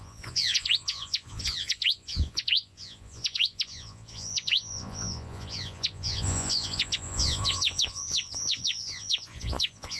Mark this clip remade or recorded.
remade